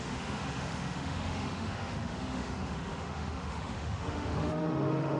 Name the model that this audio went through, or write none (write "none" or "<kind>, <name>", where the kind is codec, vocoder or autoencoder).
autoencoder, DAC-VAE